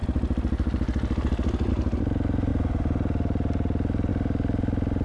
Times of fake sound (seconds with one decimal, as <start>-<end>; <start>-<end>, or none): none